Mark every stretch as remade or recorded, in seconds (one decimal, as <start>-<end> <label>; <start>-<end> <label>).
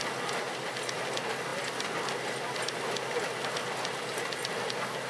0.0-5.1 recorded